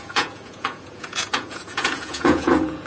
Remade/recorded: remade